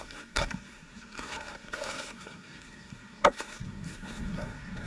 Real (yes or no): no